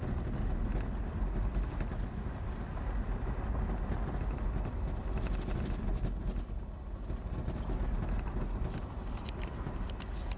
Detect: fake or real real